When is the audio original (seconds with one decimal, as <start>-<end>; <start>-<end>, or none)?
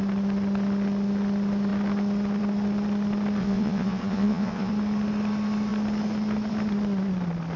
0.0-3.4; 4.7-7.6